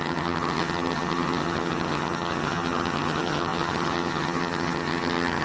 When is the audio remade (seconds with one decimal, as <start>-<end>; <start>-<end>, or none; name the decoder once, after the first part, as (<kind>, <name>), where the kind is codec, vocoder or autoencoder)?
0.0-5.4 (vocoder, HiFi-GAN)